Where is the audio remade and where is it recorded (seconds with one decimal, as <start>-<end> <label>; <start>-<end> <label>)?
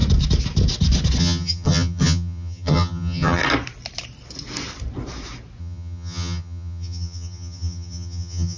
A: 0.0-1.2 recorded; 1.2-3.4 remade; 3.4-5.6 recorded; 5.6-8.6 remade